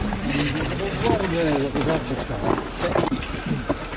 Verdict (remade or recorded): recorded